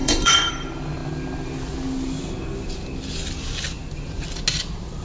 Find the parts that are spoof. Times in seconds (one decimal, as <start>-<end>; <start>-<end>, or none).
0.0-0.5

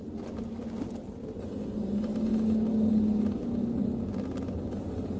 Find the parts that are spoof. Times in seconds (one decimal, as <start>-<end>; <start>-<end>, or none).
none

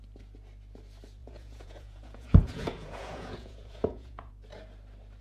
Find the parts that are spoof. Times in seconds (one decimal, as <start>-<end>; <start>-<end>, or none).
1.2-4.3

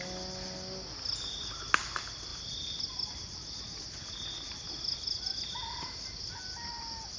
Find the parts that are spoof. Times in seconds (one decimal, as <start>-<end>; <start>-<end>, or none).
none

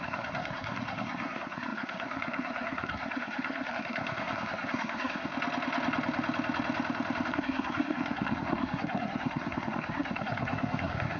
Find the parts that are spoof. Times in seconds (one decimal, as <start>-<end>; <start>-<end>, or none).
0.0-5.3; 7.3-11.2

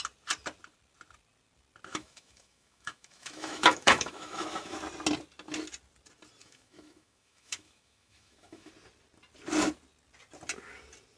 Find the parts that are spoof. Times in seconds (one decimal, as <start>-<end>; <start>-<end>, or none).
1.9-4.8; 6.4-8.7

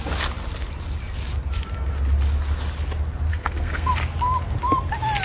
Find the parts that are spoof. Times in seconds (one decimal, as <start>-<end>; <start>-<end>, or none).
3.3-3.9

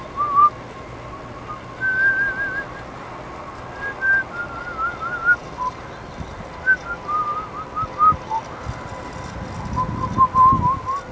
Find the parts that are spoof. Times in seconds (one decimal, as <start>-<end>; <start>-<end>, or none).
none